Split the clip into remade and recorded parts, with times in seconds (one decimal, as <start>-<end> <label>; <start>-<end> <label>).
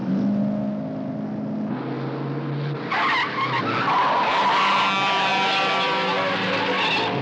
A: 0.0-7.2 recorded